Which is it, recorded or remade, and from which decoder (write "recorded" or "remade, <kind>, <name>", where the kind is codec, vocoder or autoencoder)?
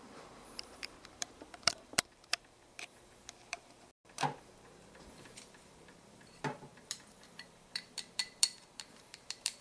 remade, vocoder, BigVGAN v2